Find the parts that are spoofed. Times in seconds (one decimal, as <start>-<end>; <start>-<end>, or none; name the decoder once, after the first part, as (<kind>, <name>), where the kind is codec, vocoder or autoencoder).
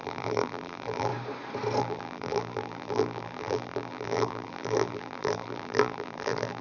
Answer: 0.0-1.1 (vocoder, BigVGAN v2); 1.8-6.6